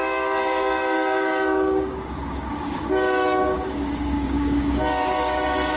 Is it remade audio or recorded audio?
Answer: remade